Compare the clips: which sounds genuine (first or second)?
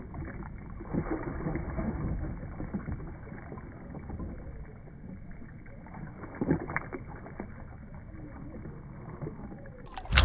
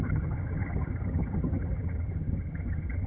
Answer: first